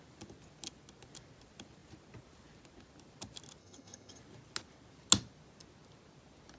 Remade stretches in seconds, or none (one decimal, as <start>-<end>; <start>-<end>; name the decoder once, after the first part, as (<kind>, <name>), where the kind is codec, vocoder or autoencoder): 3.6-4.2 (vocoder, HiFi-GAN)

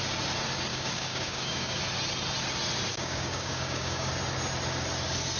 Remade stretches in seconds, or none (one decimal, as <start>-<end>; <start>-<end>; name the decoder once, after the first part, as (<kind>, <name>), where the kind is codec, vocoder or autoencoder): 0.7-1.8 (codec, DAC); 2.9-4.1